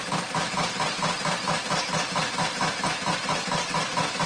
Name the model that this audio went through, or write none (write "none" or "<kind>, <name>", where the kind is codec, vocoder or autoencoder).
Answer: none